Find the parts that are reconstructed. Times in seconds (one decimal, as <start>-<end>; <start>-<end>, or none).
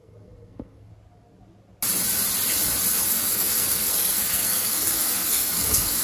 0.0-0.9; 2.9-6.0